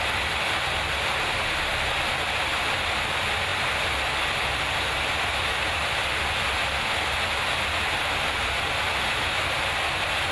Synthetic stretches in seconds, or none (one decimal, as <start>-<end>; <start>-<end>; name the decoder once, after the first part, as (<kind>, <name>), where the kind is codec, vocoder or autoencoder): none